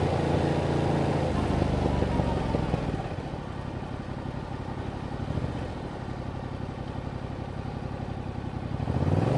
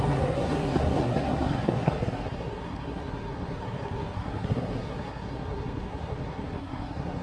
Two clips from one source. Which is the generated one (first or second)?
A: second